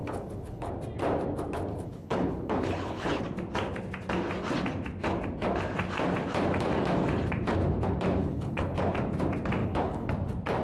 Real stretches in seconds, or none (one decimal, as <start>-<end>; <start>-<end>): 0.7-1.7; 3.2-8.2; 8.9-9.6; 10.1-10.6

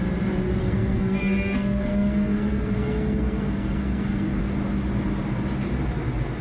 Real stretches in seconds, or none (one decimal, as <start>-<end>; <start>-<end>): 0.0-0.6; 4.4-6.4